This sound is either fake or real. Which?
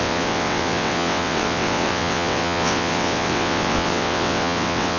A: fake